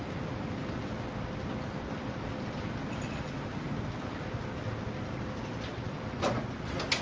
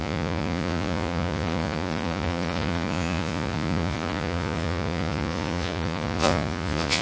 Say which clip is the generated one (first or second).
second